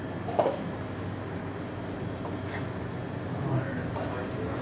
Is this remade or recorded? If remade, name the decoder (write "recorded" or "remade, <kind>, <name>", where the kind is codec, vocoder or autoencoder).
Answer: recorded